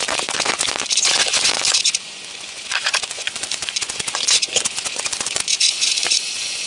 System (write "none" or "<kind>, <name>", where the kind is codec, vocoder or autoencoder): vocoder, Vocos